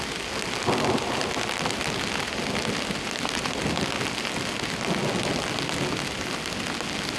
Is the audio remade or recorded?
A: recorded